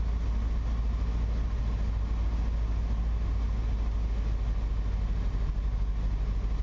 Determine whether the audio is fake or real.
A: real